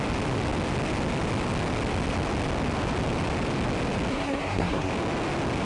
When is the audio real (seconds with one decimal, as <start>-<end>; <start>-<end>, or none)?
0.0-4.1; 4.9-5.7